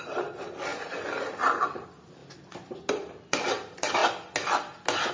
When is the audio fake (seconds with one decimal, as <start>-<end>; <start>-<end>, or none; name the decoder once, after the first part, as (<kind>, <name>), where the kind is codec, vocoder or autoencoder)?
none